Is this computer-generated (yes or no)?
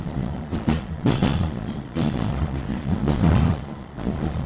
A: yes